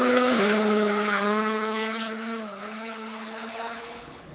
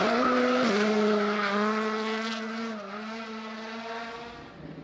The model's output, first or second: first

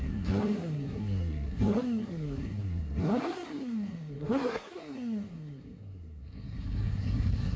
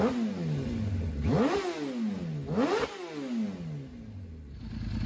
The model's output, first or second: first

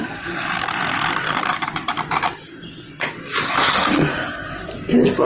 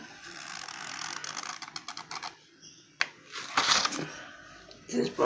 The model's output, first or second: first